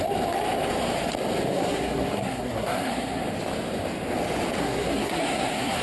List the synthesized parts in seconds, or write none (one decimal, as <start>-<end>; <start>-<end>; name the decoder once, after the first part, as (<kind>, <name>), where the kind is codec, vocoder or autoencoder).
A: 1.5-3.2 (codec, SNAC); 4.6-5.8